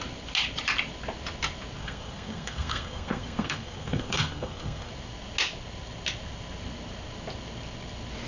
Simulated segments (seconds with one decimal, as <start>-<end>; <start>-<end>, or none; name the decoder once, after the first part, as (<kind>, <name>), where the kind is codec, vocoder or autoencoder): 1.8-4.9 (codec, SNAC)